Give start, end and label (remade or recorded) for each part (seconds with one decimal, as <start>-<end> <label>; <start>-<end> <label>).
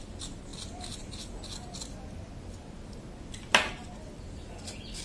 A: 0.0-5.0 recorded